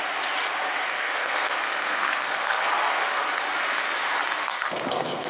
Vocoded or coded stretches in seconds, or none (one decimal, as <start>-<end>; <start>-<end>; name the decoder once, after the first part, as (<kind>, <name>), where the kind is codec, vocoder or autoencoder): 0.9-2.7 (codec, SNAC); 4.5-5.3